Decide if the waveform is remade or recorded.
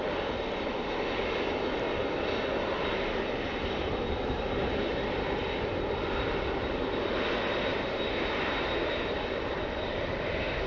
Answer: recorded